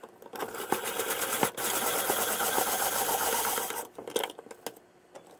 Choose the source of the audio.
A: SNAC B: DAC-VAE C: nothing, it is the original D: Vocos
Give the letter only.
C